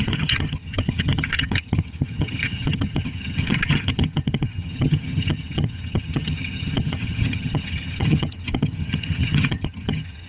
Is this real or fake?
fake